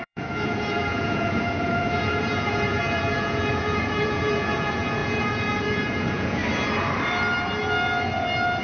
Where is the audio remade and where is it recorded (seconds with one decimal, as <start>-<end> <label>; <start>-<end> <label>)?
0.0-6.4 remade; 6.4-8.6 recorded